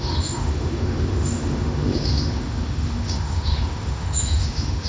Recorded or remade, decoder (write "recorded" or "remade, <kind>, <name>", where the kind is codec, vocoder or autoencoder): remade, autoencoder, DAC-VAE